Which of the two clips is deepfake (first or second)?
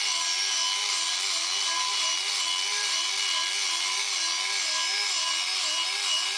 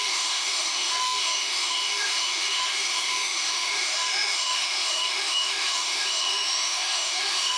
second